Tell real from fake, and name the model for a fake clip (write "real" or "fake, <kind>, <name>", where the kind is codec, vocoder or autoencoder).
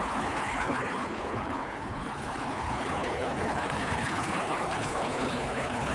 fake, codec, HILCodec